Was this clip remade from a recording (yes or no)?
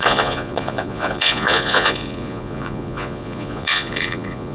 yes